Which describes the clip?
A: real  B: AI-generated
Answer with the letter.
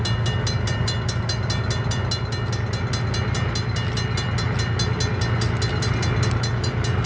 A